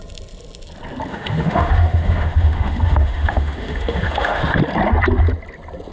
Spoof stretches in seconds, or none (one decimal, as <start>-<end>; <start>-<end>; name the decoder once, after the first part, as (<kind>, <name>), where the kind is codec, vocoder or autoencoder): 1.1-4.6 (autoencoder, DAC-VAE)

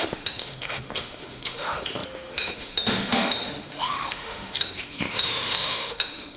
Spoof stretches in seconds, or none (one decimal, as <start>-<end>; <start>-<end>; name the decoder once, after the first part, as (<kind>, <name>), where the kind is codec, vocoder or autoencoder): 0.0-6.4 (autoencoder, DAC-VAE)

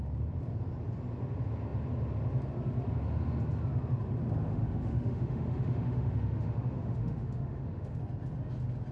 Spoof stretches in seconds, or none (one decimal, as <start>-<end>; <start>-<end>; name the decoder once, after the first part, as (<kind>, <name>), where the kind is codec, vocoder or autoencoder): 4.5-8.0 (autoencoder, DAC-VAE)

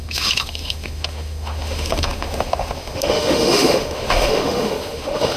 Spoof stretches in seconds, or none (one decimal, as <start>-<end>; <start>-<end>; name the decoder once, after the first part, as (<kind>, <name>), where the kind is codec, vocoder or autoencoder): 0.0-5.4 (autoencoder, DAC-VAE)

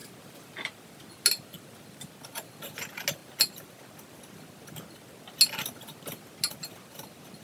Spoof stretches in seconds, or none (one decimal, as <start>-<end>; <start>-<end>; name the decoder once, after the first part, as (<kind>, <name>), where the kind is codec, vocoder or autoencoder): none